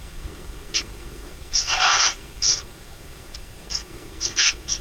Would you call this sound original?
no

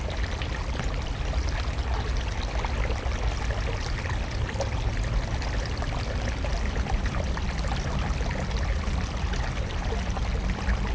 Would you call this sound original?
yes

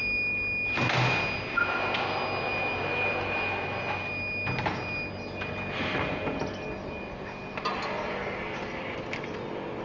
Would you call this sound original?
yes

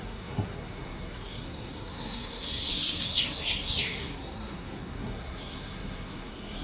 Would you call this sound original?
no